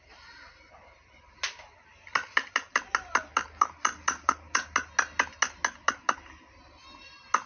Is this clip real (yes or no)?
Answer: yes